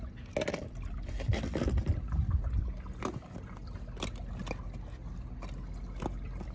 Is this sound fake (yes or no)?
no